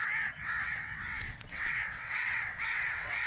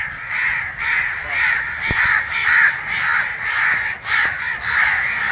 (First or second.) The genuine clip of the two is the second